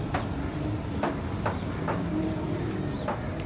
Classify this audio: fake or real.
real